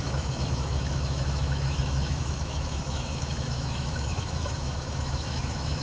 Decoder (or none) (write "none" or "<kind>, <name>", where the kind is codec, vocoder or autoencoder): autoencoder, DAC-VAE